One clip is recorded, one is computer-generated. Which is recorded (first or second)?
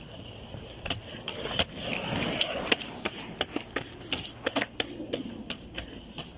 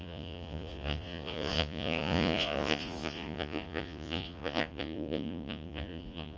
first